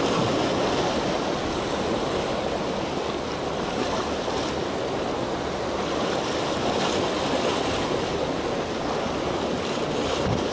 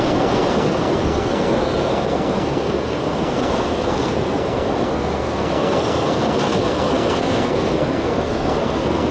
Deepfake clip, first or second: second